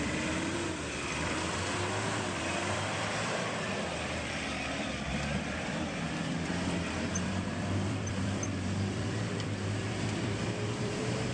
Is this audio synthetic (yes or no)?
yes